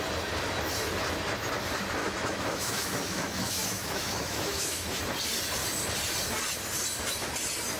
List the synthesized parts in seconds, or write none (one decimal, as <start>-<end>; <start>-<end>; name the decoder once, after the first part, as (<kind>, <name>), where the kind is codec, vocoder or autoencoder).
2.0-5.0 (autoencoder, DAC-VAE)